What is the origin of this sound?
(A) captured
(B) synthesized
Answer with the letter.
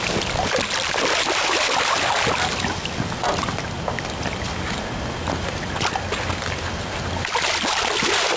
A